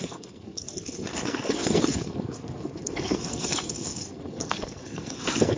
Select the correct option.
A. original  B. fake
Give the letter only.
B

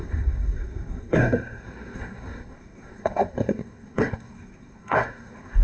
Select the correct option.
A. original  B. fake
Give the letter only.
B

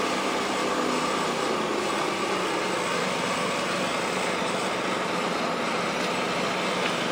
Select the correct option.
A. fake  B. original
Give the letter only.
B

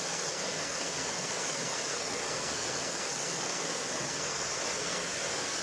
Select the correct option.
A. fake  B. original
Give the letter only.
A